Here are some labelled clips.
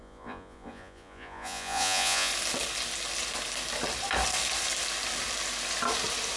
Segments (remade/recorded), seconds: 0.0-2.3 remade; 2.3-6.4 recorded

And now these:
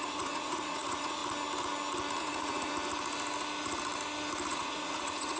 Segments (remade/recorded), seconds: 0.0-1.2 remade; 1.2-2.2 recorded; 2.2-2.7 remade; 2.7-4.5 recorded; 4.5-5.4 remade

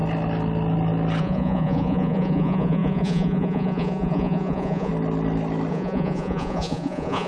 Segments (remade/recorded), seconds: 0.0-1.2 recorded; 1.2-4.9 remade; 4.9-5.7 recorded; 5.7-7.3 remade